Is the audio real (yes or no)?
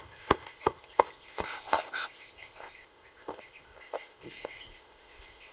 no